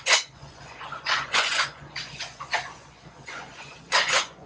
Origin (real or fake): fake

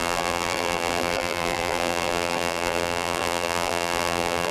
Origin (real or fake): fake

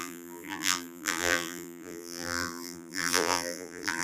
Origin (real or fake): fake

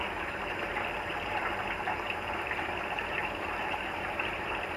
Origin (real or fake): fake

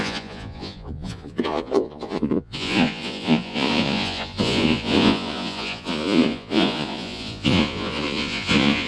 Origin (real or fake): fake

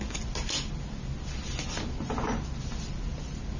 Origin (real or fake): real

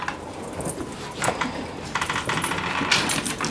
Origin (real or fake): real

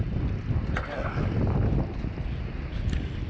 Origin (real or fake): real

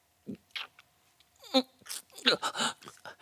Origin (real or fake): real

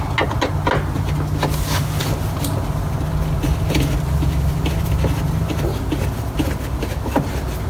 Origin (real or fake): real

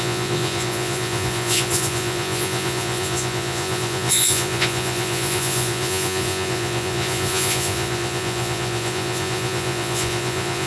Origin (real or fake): fake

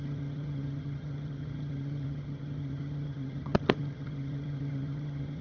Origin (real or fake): fake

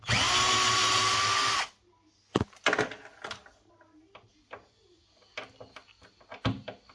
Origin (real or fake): real